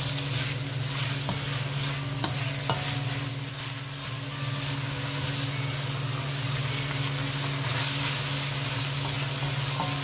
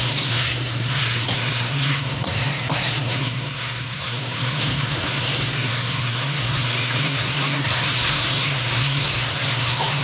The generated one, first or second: second